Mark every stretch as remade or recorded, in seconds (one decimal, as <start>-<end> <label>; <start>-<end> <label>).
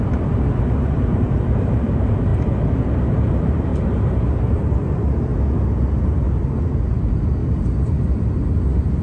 0.0-3.7 remade; 3.7-4.5 recorded; 4.5-5.3 remade; 5.3-6.0 recorded; 6.0-7.4 remade; 7.4-8.3 recorded; 8.3-9.0 remade